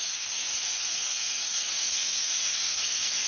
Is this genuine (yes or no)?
no